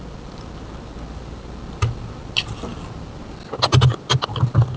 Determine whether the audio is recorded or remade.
recorded